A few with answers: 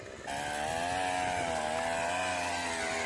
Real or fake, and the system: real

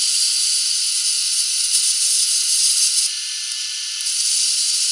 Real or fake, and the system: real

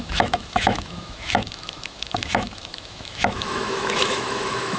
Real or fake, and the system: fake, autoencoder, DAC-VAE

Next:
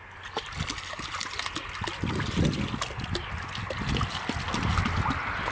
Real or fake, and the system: real